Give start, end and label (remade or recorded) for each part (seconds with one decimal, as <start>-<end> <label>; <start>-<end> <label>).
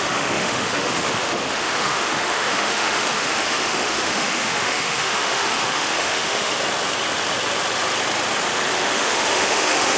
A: 0.0-6.5 remade; 6.5-8.7 recorded; 8.7-10.0 remade